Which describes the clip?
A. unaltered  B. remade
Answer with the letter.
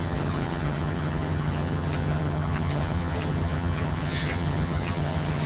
B